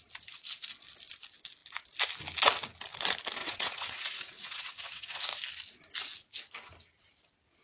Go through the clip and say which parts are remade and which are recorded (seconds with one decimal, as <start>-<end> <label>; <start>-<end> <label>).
0.0-3.4 recorded; 3.4-5.2 remade; 5.2-7.6 recorded